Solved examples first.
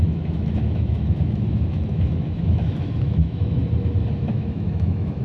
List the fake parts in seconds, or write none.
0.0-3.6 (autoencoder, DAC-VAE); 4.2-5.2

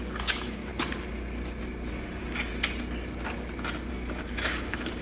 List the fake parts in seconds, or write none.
0.0-0.7 (codec, DAC); 1.9-2.5; 3.9-5.0

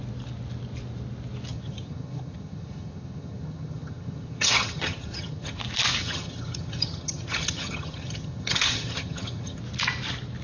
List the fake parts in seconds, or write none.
1.5-5.6 (vocoder, HiFi-GAN); 6.0-9.6